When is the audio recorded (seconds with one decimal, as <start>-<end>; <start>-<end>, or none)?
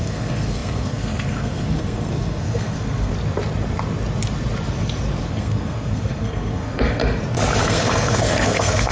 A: 3.1-5.3; 7.0-7.6